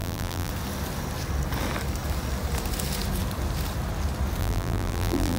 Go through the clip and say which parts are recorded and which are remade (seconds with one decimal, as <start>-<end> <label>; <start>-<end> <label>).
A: 0.0-0.5 remade; 0.5-4.4 recorded; 4.4-5.4 remade